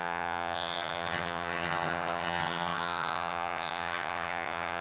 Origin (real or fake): fake